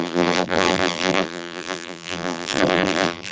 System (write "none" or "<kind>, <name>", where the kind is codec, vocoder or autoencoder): vocoder, BigVGAN v2